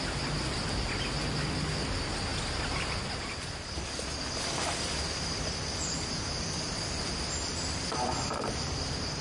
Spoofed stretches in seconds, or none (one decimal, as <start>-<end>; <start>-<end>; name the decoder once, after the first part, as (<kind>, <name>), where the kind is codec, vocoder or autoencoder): none